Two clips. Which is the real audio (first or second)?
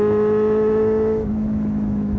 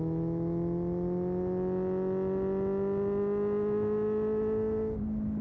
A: second